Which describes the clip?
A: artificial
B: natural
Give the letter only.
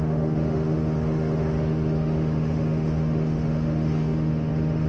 A